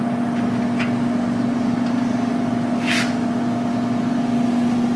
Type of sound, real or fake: real